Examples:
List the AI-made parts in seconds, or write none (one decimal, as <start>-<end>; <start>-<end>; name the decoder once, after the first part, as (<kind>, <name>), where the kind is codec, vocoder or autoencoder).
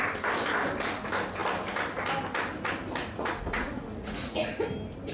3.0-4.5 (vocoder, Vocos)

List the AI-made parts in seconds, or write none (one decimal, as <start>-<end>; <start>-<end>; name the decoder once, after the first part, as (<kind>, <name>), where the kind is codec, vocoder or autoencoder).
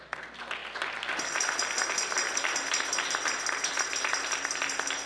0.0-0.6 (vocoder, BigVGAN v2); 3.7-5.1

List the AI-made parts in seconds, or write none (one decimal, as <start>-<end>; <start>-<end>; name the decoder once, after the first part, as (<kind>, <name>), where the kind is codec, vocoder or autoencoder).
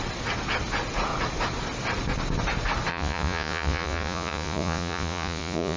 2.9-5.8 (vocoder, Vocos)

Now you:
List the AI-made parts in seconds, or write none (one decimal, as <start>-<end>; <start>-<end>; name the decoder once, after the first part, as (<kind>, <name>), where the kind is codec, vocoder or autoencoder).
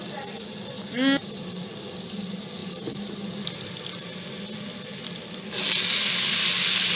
none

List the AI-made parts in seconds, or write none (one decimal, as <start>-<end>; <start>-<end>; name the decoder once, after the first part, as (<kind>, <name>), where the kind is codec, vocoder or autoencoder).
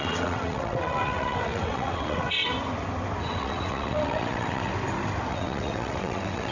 0.0-2.5 (vocoder, WaveNeXt); 3.2-4.7; 5.3-6.5